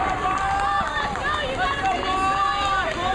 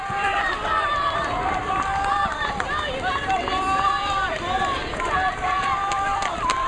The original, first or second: first